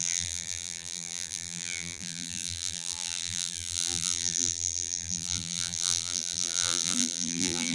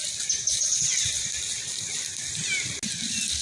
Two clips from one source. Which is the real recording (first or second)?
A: second